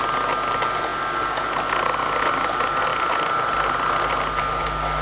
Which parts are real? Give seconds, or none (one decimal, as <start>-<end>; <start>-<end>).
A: 0.0-5.0